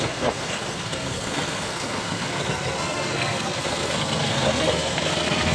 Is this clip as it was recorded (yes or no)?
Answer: no